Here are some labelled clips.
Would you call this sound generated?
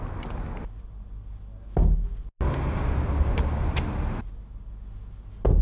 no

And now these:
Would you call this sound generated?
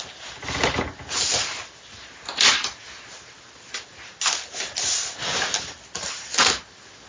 no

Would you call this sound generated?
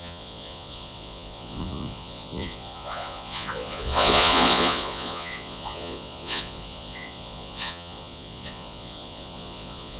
yes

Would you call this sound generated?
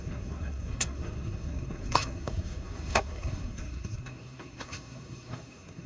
yes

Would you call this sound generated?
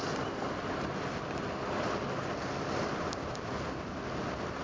no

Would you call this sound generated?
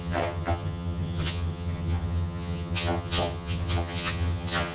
yes